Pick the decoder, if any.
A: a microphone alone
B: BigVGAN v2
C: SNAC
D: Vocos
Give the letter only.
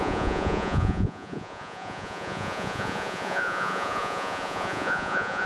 D